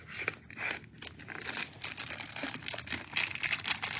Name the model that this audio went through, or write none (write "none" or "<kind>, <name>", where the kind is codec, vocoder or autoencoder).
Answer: none